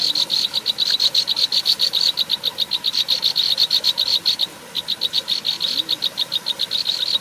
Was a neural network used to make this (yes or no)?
no